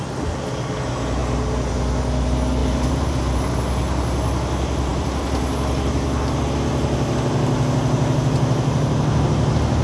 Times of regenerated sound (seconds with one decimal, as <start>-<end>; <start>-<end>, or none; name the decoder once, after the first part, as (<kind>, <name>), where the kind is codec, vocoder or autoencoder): 2.6-3.2 (vocoder, BigVGAN v2)

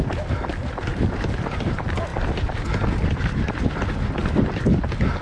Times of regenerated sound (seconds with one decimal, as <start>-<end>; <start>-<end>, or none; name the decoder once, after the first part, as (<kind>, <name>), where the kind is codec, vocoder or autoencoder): 2.1-3.8 (vocoder, BigVGAN v2); 4.2-5.2

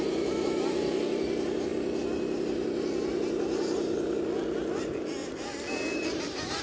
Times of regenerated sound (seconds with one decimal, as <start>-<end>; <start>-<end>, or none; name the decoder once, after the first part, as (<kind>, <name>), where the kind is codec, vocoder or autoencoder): 0.0-1.7 (vocoder, BigVGAN v2); 5.7-6.6

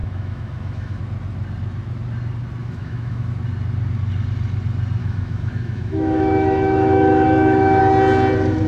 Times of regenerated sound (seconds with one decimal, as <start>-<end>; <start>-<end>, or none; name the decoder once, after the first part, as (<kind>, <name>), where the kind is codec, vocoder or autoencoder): 0.0-1.0 (autoencoder, DAC-VAE); 2.6-3.3; 5.0-7.8